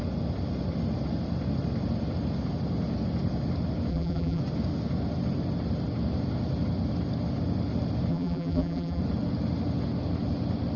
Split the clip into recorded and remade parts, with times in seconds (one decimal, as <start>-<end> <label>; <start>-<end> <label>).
0.0-3.9 recorded; 3.9-4.4 remade; 4.4-8.1 recorded; 8.1-9.0 remade; 9.0-10.8 recorded